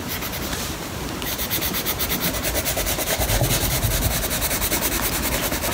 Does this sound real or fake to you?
real